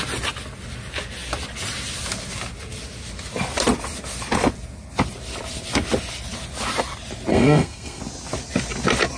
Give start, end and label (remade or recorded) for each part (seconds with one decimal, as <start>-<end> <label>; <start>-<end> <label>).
0.0-7.3 recorded; 7.3-8.0 remade; 8.0-9.2 recorded